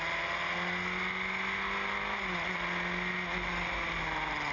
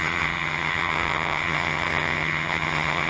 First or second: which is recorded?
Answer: first